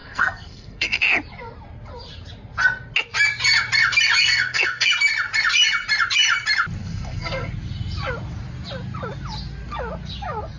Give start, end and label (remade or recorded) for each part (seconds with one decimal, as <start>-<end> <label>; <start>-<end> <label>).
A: 0.0-1.0 remade; 1.0-4.2 recorded; 4.2-4.9 remade; 4.9-6.8 recorded; 6.8-7.5 remade; 7.5-10.6 recorded